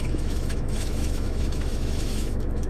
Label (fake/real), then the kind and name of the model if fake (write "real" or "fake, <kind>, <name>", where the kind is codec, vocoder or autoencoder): fake, autoencoder, DAC-VAE